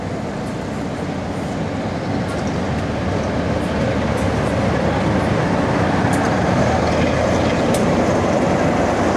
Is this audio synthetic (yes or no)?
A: no